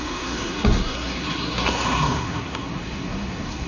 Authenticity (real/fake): fake